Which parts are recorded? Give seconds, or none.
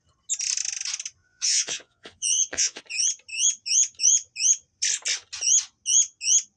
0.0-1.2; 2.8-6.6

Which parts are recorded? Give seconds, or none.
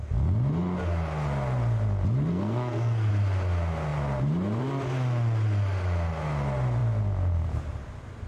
0.0-2.3; 3.1-8.3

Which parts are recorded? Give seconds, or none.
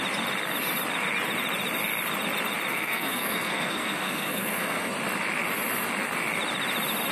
0.0-2.7; 4.9-7.1